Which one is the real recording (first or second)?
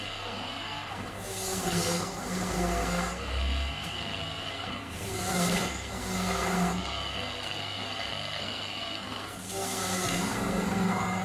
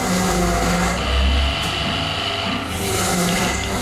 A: second